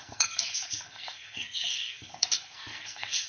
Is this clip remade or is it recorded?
remade